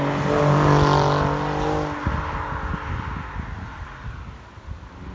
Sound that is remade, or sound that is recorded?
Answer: recorded